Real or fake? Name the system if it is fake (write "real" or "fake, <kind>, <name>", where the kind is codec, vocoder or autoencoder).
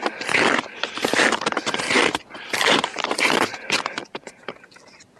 fake, vocoder, BigVGAN v2